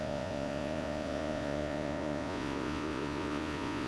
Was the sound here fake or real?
fake